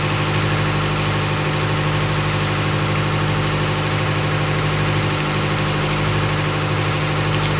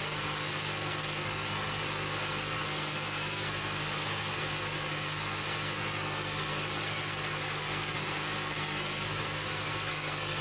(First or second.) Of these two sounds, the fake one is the second